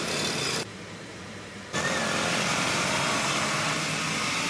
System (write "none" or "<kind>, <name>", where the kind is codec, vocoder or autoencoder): vocoder, BigVGAN v2